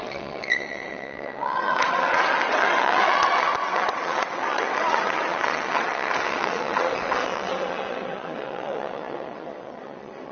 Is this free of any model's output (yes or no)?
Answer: no